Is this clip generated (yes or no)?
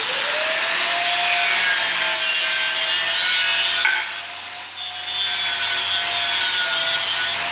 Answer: no